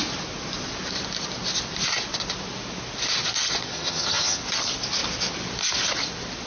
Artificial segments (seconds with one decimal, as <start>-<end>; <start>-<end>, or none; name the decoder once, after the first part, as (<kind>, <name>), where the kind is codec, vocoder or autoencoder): 3.7-4.4 (vocoder, HiFi-GAN)